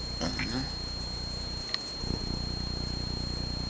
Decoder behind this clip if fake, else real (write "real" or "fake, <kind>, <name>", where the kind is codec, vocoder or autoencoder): real